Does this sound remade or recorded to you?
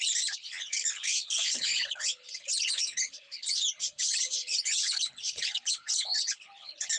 remade